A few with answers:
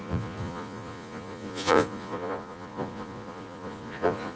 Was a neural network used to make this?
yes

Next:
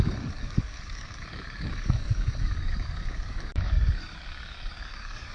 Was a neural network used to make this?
yes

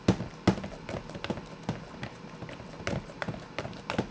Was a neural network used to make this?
no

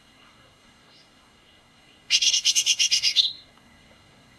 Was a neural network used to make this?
yes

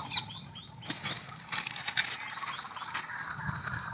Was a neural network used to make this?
no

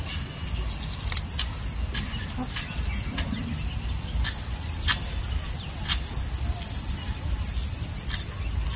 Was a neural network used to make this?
no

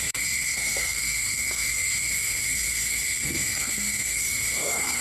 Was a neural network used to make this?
yes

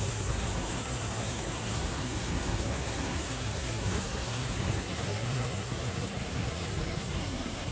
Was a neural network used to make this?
yes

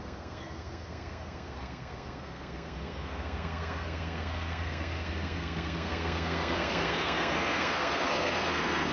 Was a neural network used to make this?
yes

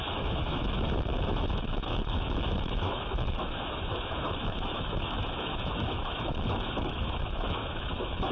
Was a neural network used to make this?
yes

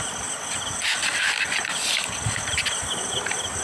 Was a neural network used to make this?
no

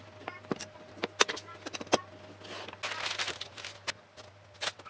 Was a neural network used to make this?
no